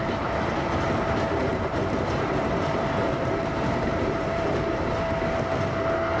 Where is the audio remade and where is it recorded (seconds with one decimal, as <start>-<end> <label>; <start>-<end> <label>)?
0.0-1.4 recorded; 1.4-4.9 remade; 4.9-6.2 recorded